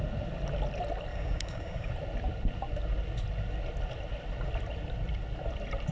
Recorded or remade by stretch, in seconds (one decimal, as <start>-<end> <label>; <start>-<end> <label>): 0.0-1.1 recorded; 1.1-1.9 remade; 1.9-5.9 recorded